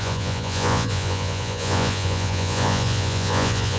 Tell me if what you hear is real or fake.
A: fake